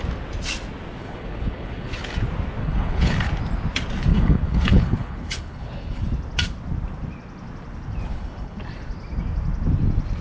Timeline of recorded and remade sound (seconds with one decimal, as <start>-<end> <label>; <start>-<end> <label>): 0.0-1.0 recorded; 1.0-2.0 remade; 2.0-2.6 recorded; 2.6-3.3 remade; 3.3-4.1 recorded; 4.1-6.0 remade; 6.0-8.1 recorded; 8.1-8.6 remade; 8.6-10.2 recorded